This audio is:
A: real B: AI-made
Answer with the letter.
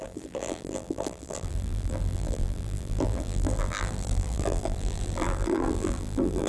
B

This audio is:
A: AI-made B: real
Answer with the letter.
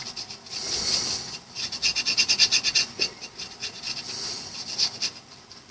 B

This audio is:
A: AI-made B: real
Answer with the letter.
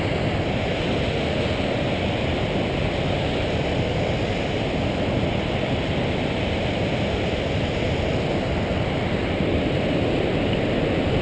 B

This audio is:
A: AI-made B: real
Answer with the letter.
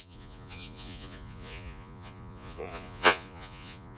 A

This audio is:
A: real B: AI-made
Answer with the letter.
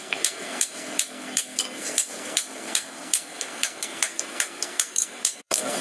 B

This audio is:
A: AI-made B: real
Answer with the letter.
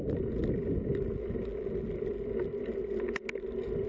B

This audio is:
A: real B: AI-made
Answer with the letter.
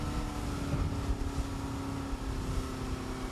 A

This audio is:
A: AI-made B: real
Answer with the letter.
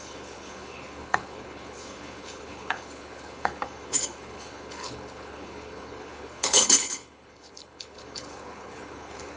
A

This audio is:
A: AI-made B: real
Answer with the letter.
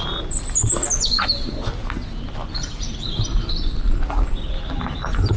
B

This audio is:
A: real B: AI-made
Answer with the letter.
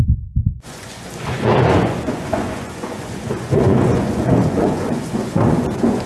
B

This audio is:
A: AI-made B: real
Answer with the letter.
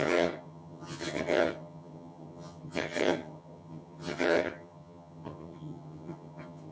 A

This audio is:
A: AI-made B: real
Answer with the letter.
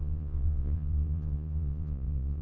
A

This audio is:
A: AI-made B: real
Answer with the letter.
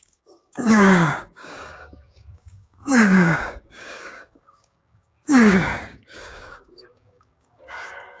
A